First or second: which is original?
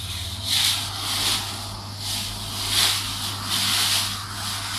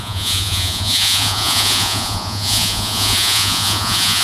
first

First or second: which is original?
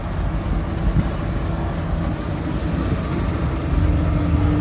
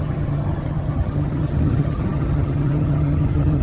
first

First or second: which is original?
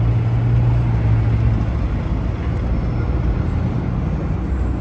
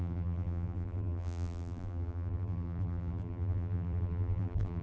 first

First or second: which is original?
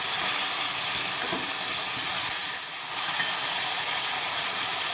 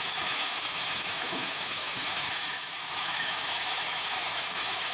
first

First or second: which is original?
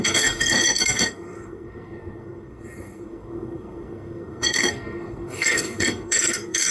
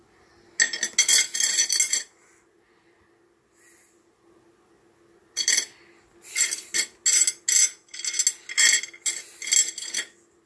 second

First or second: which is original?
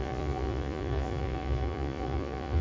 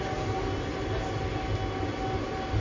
second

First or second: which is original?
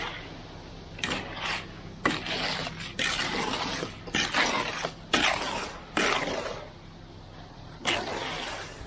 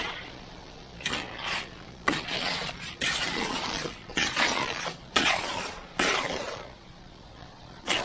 first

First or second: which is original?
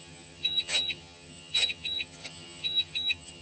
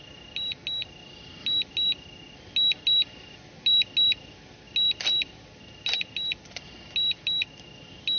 second